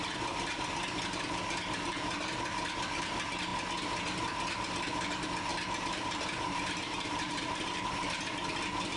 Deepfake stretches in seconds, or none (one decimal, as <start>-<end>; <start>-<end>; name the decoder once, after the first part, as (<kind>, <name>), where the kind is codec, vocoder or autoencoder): 5.5-7.8 (vocoder, BigVGAN v2)